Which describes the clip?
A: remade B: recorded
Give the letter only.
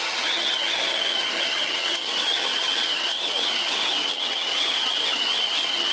A